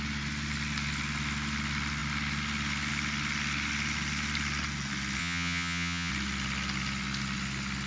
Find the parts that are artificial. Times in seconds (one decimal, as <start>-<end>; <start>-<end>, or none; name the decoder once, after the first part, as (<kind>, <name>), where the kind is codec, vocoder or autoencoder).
5.2-6.1 (vocoder, HiFi-GAN)